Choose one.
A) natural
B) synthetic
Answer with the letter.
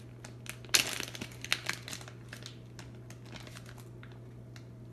A